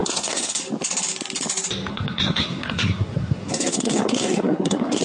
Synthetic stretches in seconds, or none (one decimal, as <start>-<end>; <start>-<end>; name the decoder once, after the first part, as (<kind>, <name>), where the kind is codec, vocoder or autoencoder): 0.0-0.6 (codec, SNAC); 1.9-5.0